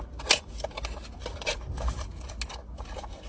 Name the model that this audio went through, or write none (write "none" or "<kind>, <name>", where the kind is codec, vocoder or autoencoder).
none